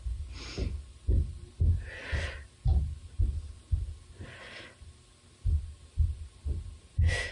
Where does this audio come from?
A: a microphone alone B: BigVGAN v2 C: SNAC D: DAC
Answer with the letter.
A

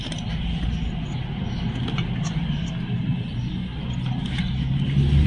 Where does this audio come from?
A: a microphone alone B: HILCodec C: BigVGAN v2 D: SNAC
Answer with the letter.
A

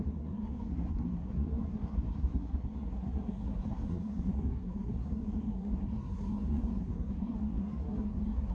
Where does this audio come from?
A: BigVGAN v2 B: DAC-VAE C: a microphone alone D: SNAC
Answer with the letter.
D